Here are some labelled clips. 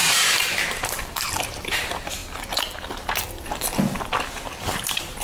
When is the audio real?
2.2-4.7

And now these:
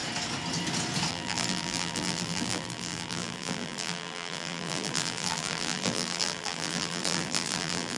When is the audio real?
0.0-1.1